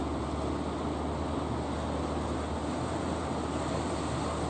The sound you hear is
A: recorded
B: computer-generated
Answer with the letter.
A